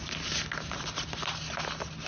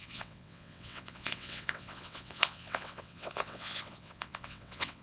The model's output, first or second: second